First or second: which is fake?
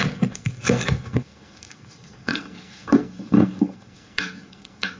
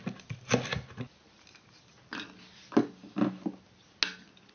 first